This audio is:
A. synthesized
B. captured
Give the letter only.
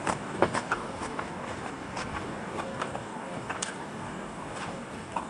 A